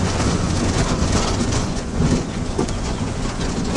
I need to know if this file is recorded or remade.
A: remade